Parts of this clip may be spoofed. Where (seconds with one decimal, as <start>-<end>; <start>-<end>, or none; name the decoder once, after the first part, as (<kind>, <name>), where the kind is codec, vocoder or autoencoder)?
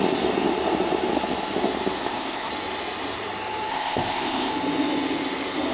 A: 2.0-2.5 (codec, ZipCodec); 3.7-4.5